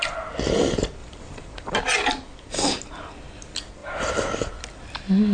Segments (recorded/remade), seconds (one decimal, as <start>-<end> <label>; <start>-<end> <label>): 0.0-1.0 recorded; 1.0-1.9 remade; 1.9-3.8 recorded; 3.8-4.5 remade; 4.5-5.3 recorded